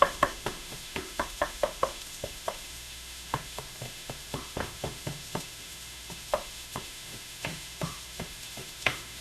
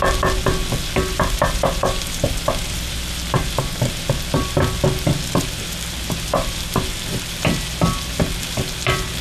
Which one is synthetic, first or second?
first